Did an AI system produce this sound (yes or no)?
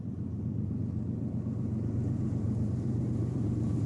yes